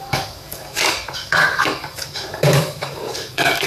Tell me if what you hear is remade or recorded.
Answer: remade